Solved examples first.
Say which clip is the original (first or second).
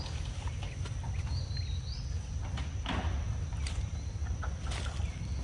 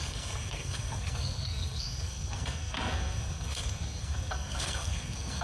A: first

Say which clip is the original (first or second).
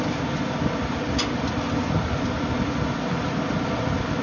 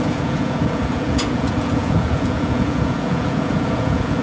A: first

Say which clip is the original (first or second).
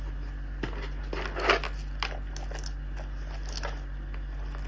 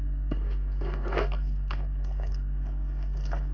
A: first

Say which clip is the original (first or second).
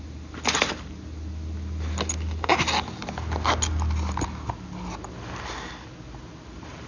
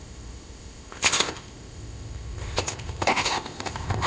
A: first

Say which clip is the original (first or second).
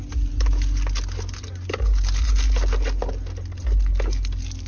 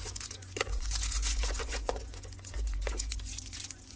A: first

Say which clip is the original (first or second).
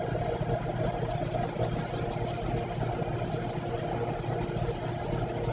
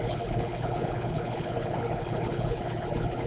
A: first